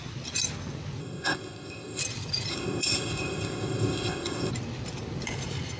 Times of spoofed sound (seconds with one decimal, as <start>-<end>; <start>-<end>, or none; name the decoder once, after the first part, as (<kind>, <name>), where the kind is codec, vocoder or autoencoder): 1.0-2.0 (codec, ZipCodec); 2.5-4.5